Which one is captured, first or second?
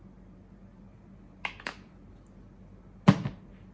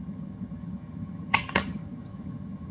first